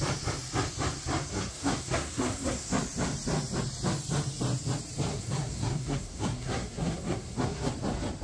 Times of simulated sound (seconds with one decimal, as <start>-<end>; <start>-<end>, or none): 1.3-2.7; 5.1-7.7